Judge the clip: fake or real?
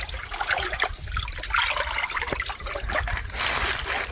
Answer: fake